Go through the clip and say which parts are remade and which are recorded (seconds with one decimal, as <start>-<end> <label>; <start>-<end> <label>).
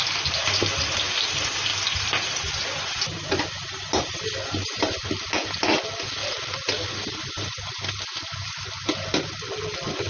0.0-10.1 recorded